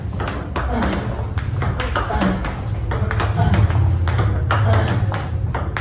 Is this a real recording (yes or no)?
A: yes